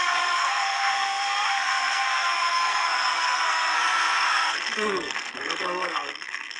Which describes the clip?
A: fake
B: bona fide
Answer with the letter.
A